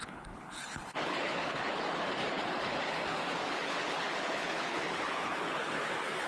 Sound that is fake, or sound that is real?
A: fake